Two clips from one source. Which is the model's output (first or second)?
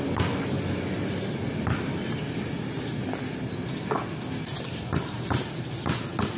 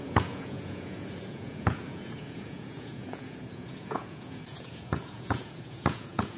second